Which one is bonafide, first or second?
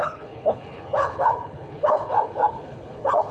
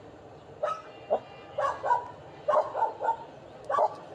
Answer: second